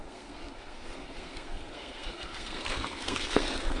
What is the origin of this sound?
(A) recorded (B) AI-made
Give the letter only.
B